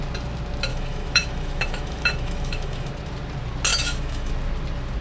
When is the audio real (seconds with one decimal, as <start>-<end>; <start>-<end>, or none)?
0.0-0.7; 2.9-3.7; 4.3-5.0